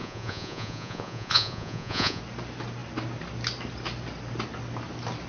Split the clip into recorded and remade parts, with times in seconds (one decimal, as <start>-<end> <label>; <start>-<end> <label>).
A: 0.0-2.2 remade; 2.2-5.3 recorded